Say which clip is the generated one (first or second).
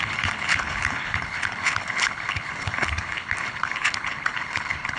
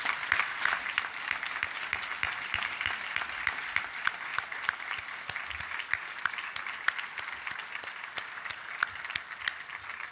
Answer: first